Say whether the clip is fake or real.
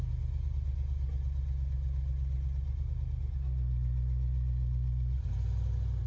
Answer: real